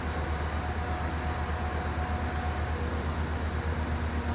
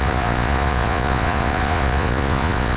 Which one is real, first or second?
first